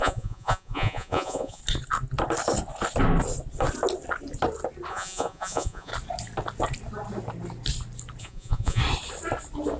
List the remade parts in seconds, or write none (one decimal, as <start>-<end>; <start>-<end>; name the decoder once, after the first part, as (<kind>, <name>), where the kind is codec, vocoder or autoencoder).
0.0-1.6 (vocoder, Vocos); 4.9-5.9; 8.2-8.8